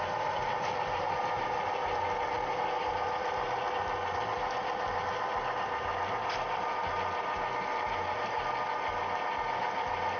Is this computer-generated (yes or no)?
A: no